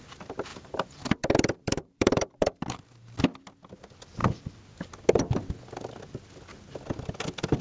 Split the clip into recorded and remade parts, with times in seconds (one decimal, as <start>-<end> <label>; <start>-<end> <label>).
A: 0.0-0.5 recorded; 0.5-3.2 remade; 3.2-7.6 recorded